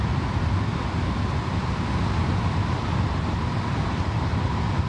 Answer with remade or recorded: recorded